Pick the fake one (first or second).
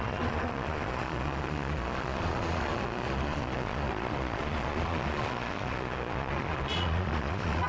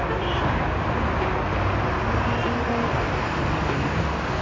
first